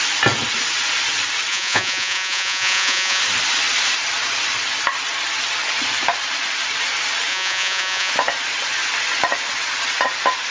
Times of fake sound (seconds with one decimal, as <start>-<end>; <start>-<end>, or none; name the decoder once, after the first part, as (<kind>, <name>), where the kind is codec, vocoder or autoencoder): 1.5-3.2 (vocoder, Vocos); 7.3-8.1